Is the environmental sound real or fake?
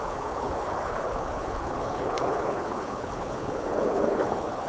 fake